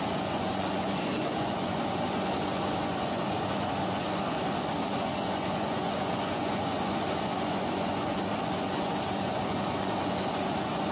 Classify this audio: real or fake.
fake